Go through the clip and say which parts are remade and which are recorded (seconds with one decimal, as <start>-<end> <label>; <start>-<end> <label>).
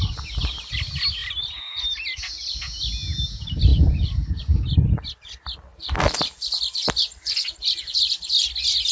0.0-1.2 recorded; 1.2-1.8 remade; 1.8-3.7 recorded; 3.7-4.4 remade; 4.4-5.7 recorded; 5.7-7.5 remade; 7.5-8.9 recorded